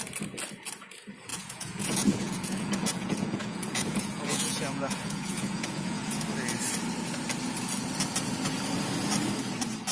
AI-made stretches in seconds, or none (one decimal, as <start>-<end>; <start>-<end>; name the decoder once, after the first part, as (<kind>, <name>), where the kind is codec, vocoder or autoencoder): 1.3-6.2 (vocoder, Vocos)